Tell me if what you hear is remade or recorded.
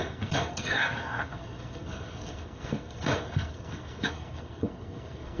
remade